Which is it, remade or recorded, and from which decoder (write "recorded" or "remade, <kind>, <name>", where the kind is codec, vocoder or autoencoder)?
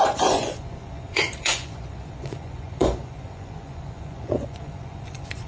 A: remade, vocoder, Vocos